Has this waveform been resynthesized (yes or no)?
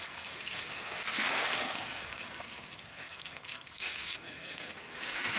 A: yes